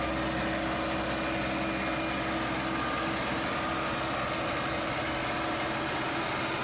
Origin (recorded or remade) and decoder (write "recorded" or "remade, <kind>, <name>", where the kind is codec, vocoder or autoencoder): recorded